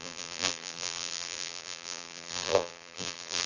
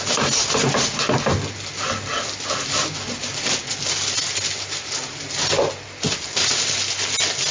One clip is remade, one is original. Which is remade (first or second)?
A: first